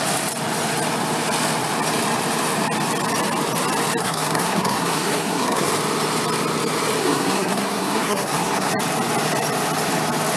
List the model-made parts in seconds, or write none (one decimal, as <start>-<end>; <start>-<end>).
4.0-5.7; 7.0-8.7